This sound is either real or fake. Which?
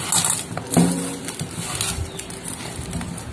real